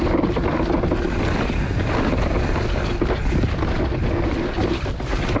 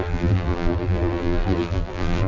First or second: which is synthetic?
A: second